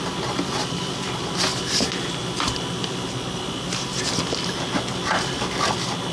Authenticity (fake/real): real